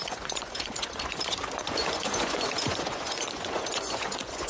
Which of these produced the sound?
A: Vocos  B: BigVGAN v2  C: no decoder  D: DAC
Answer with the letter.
A